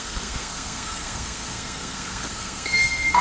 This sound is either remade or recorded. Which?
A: remade